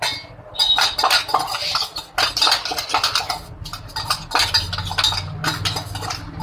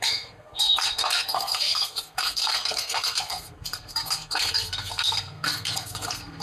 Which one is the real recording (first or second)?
first